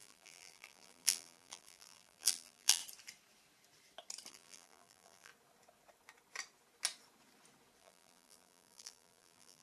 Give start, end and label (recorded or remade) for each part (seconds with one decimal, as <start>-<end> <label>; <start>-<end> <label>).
0.0-2.8 remade; 2.8-4.3 recorded; 4.3-5.3 remade; 5.3-7.8 recorded; 7.8-9.6 remade